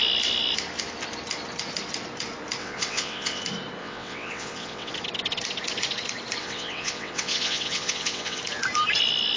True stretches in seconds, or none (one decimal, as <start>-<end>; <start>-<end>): 0.0-2.6; 3.4-3.8; 4.9-6.4; 8.4-9.4